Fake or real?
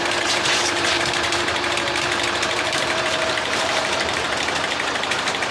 fake